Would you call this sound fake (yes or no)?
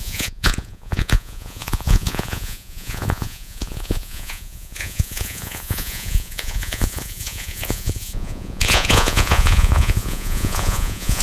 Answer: yes